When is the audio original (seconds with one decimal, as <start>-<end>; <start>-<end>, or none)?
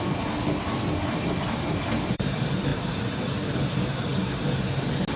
0.0-2.7; 3.2-5.2